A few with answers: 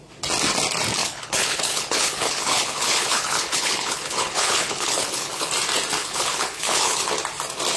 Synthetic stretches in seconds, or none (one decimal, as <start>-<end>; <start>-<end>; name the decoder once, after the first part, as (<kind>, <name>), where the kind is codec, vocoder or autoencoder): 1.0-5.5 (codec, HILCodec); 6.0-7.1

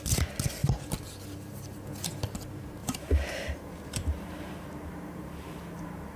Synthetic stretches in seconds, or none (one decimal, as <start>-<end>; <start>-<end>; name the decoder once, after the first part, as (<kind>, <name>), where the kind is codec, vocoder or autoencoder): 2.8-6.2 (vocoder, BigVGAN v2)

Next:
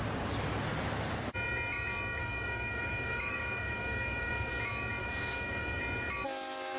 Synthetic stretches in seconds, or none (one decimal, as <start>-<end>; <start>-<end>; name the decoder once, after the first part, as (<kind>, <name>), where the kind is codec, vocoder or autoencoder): 2.2-4.5 (codec, DAC); 5.0-5.8

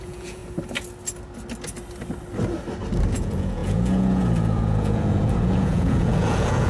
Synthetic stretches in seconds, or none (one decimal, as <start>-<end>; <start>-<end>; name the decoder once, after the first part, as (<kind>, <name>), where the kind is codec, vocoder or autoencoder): 0.0-0.4 (vocoder, Vocos); 3.1-6.7